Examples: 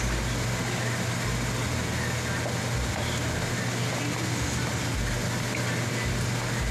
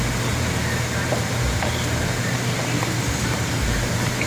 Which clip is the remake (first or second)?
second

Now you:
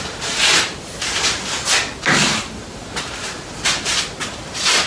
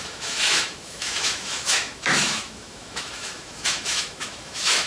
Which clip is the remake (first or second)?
second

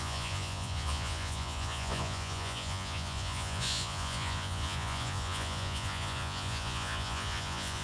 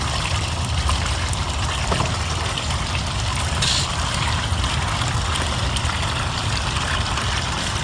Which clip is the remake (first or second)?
first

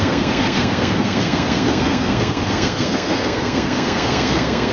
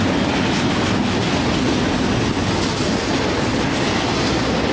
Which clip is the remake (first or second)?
first